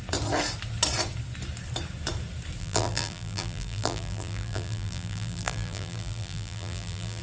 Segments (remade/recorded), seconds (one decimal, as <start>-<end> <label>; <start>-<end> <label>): 0.0-2.6 recorded; 2.6-7.2 remade